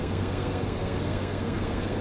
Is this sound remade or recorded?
remade